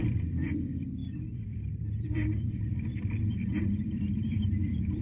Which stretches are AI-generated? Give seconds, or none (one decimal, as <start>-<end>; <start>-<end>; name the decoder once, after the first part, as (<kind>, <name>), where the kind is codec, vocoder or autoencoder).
0.0-5.0 (vocoder, BigVGAN v2)